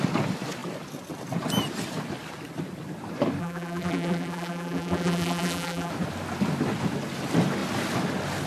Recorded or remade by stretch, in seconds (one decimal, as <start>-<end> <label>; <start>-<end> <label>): 0.0-3.4 recorded; 3.4-5.9 remade; 5.9-8.5 recorded